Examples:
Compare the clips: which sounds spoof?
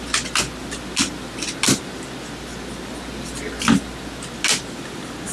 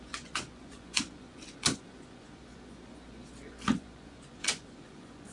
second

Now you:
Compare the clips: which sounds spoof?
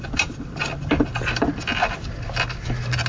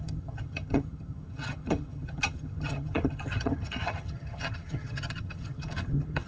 second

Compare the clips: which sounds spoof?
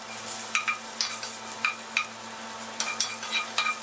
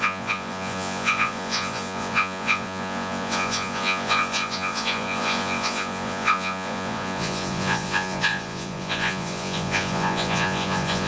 second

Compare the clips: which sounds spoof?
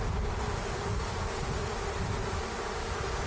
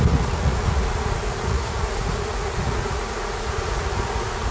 second